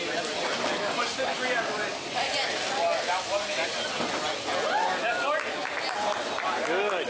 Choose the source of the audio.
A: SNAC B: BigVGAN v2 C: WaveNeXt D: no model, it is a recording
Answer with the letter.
D